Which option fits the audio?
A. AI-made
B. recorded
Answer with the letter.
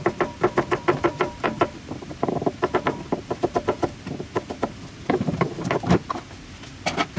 B